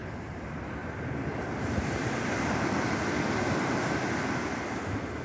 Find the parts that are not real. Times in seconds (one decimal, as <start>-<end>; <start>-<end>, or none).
none